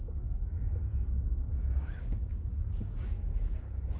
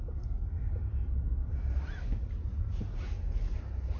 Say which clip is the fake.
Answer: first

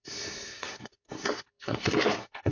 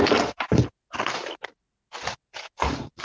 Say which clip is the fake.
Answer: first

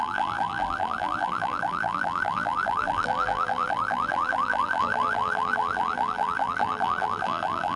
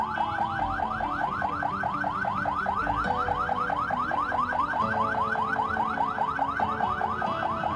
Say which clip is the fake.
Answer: first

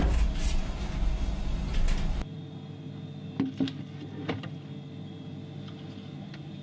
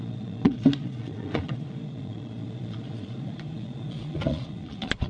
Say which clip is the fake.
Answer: second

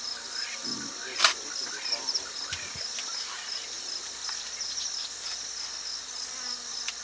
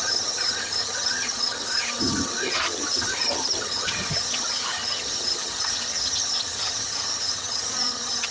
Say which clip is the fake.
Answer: second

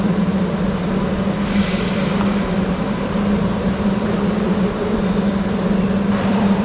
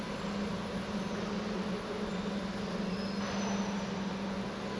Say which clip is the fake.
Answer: first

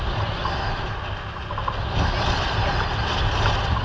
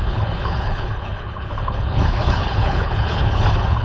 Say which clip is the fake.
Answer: second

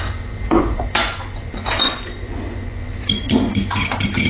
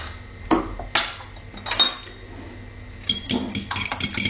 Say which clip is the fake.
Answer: first